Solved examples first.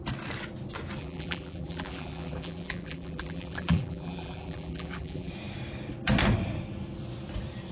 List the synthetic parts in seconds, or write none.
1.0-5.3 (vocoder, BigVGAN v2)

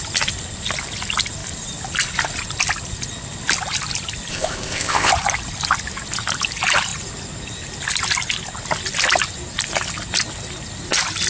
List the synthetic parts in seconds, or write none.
4.3-5.1 (codec, ZipCodec)

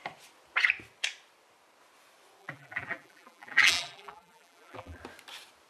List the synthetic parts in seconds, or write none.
2.4-5.0 (vocoder, BigVGAN v2)

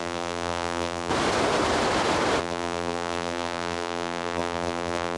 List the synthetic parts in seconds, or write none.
0.0-1.1 (vocoder, BigVGAN v2); 2.4-5.2

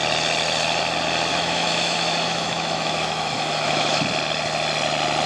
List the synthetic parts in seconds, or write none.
1.3-4.0 (autoencoder, DAC-VAE)

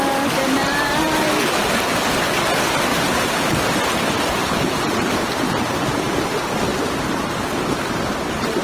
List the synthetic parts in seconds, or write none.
2.9-4.4 (vocoder, BigVGAN v2)

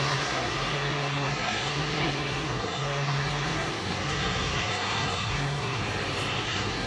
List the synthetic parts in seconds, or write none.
0.0-5.8 (codec, SNAC); 6.4-6.9

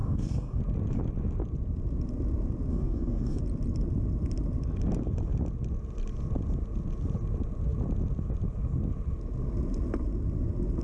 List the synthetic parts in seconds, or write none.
0.0-0.6 (codec, DAC); 2.7-3.4